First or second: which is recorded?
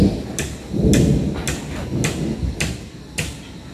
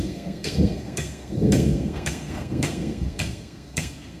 first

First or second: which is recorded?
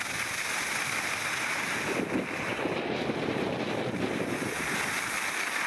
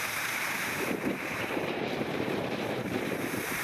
first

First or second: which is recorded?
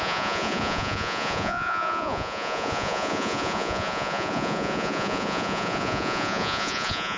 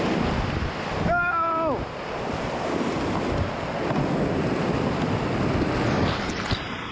second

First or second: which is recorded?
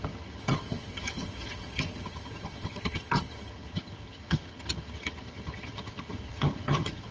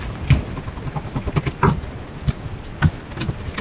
second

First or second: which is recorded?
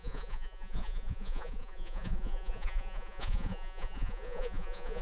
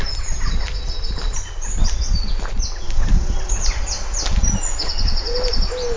second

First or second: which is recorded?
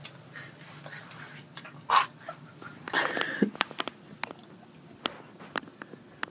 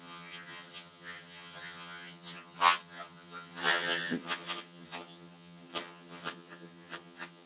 first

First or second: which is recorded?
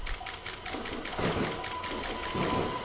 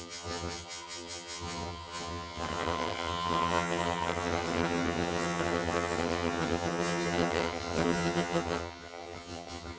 first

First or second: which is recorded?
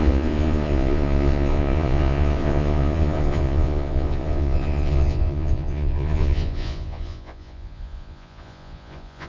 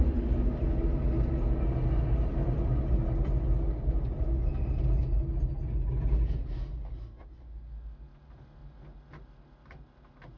second